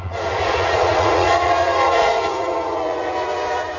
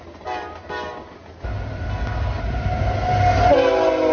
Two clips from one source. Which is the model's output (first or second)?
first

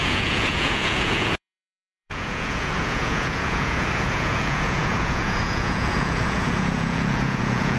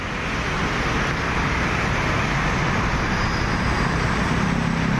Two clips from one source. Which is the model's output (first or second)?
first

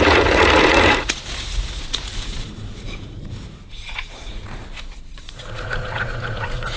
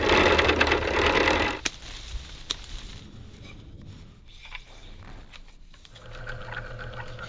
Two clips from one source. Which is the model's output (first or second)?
first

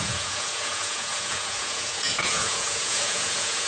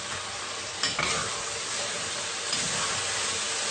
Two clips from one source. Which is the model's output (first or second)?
first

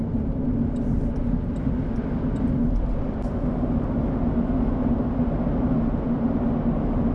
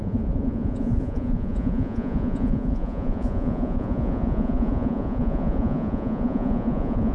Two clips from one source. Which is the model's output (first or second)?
second